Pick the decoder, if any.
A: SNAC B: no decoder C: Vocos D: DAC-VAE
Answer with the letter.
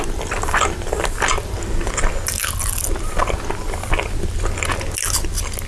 B